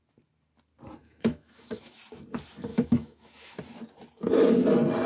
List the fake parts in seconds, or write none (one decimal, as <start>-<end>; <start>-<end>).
1.0-2.0; 2.7-3.6